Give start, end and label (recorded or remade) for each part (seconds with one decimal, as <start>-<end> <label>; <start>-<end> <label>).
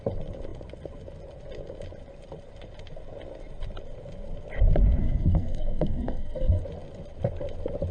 0.0-5.0 recorded; 5.0-6.6 remade; 6.6-7.9 recorded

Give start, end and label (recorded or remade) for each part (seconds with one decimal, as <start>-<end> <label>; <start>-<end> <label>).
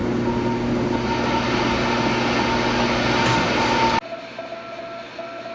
0.0-5.5 recorded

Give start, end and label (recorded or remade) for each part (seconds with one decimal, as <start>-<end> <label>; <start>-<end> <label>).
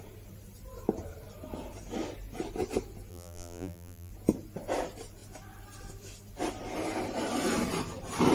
0.0-3.1 recorded; 3.1-4.1 remade; 4.1-8.3 recorded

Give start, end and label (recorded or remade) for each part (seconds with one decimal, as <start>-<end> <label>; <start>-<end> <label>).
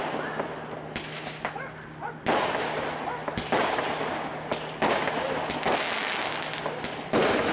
0.0-7.5 recorded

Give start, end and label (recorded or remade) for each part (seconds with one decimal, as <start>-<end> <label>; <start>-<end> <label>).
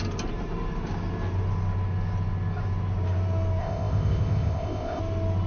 0.0-3.6 recorded; 3.6-5.0 remade; 5.0-5.5 recorded